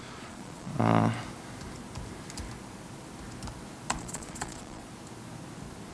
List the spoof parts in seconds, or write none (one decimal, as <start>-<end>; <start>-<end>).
0.0-0.7; 4.0-4.8